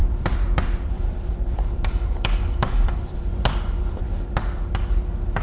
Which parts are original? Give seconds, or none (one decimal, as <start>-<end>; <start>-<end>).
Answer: 3.2-5.4